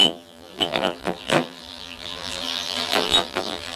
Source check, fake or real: fake